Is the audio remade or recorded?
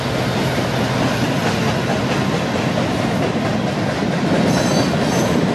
recorded